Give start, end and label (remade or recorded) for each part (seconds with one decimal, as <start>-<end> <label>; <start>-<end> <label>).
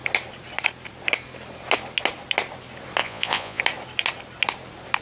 0.0-3.0 recorded; 3.0-3.6 remade; 3.6-5.0 recorded